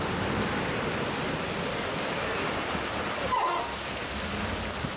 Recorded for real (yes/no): no